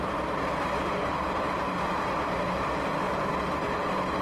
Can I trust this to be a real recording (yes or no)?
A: no